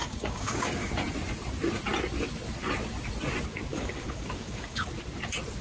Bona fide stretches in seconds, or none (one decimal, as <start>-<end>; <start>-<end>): 0.9-3.7; 4.9-5.6